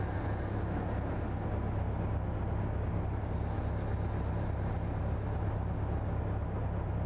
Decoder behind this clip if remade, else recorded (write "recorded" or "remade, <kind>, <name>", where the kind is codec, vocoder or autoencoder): recorded